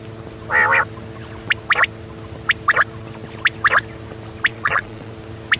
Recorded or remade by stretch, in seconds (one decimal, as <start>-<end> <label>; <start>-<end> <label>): 0.0-4.5 recorded; 4.5-5.1 remade; 5.1-5.6 recorded